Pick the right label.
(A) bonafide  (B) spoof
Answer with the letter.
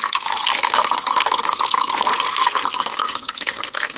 B